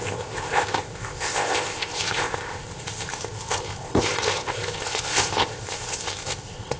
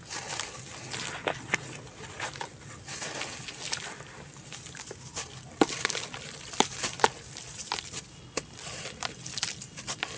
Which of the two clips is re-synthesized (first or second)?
first